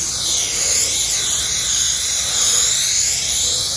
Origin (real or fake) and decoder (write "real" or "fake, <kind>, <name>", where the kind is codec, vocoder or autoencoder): real